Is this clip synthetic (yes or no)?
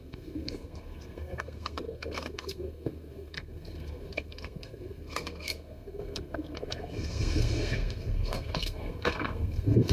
yes